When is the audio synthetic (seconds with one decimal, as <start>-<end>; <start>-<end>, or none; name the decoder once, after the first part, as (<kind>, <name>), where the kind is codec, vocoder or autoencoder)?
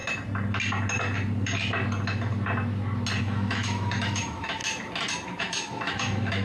3.2-4.6 (autoencoder, DAC-VAE); 5.4-6.4